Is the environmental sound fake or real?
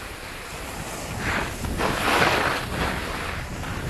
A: real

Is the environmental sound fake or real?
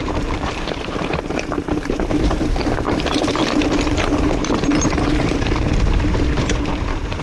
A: fake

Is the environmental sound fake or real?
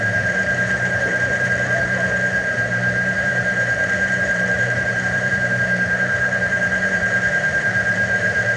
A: fake